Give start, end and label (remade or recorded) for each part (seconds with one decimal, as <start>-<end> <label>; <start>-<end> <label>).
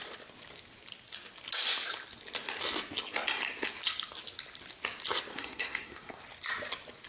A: 0.0-5.3 recorded; 5.3-6.2 remade; 6.2-7.1 recorded